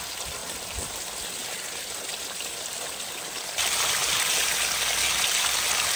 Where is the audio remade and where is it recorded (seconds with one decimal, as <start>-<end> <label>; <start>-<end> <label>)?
0.0-6.0 recorded